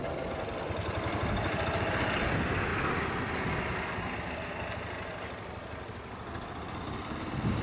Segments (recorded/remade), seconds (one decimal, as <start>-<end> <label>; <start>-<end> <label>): 0.0-7.6 recorded